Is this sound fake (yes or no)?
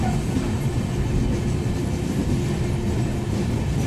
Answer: no